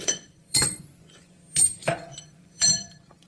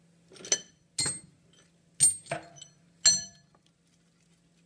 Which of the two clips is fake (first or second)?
first